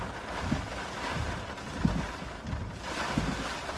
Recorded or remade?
recorded